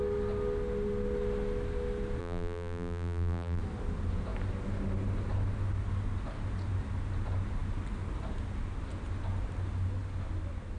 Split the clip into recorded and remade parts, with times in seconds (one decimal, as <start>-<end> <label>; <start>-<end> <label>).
0.0-2.2 recorded; 2.2-3.6 remade; 3.6-10.8 recorded